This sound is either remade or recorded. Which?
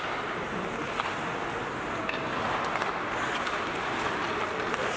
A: recorded